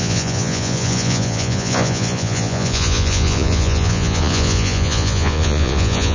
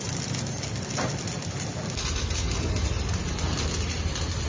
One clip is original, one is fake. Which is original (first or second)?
second